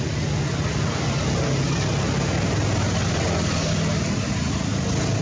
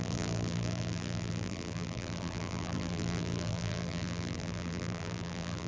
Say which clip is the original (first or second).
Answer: first